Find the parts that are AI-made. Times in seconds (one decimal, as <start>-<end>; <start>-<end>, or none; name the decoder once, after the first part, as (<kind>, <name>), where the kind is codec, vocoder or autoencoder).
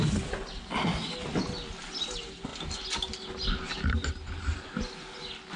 none